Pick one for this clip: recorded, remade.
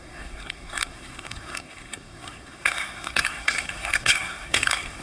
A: remade